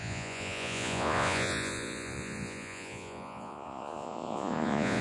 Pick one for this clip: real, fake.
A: fake